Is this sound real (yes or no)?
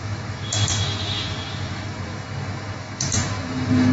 no